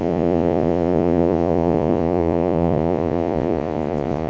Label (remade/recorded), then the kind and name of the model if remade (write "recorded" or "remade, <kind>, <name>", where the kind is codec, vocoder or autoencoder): remade, vocoder, Vocos